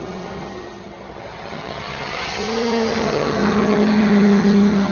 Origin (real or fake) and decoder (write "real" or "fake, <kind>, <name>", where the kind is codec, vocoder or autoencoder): fake, vocoder, HiFi-GAN